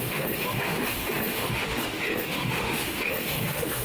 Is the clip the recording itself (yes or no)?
no